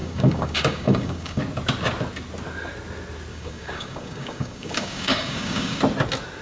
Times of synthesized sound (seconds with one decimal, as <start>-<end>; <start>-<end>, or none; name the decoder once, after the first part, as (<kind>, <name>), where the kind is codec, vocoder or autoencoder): 0.0-1.4 (codec, DAC); 3.3-5.8